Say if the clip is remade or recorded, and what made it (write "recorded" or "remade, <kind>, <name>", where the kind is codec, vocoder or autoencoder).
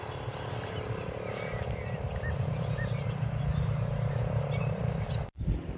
remade, vocoder, BigVGAN v2